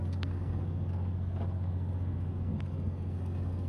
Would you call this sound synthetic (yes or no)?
yes